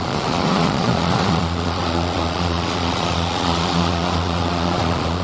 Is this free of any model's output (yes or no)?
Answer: no